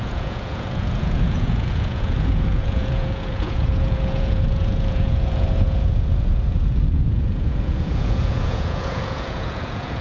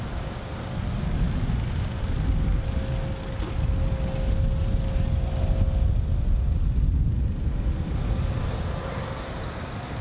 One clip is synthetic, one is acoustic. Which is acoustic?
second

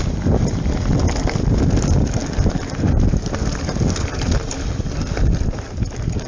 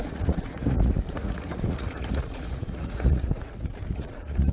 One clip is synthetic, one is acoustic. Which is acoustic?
first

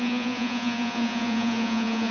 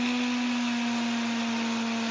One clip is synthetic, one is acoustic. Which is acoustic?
second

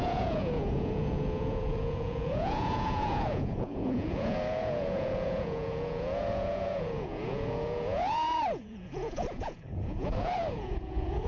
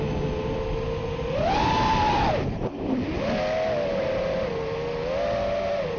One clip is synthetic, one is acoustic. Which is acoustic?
second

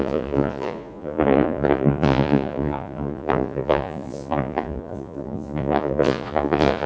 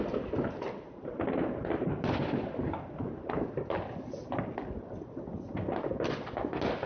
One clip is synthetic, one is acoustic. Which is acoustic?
second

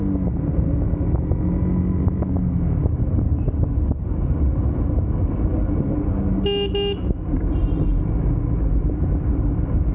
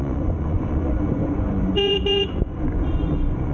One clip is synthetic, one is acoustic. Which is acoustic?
first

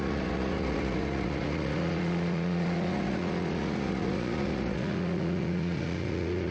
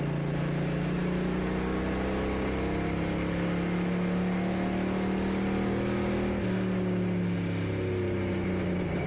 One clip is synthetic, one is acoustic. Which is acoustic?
second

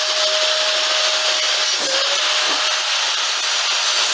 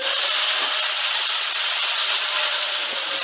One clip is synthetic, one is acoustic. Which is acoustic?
first